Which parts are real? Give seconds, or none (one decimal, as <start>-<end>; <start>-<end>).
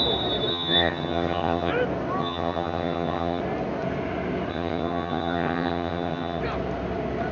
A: 0.0-0.5; 1.7-2.2; 3.4-4.5; 6.4-7.3